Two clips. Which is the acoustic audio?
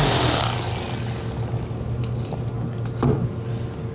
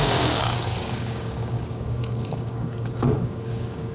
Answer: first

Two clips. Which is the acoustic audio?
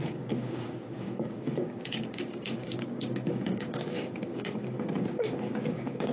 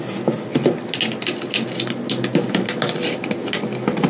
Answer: second